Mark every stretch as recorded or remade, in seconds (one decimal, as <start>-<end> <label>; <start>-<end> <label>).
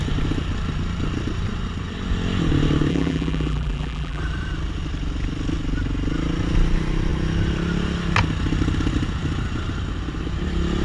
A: 0.0-2.9 recorded; 2.9-4.2 remade; 4.2-10.8 recorded